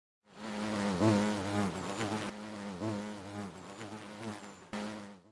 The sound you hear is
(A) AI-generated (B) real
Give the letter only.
B